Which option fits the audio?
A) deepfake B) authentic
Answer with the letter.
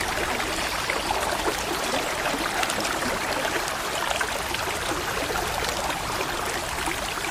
B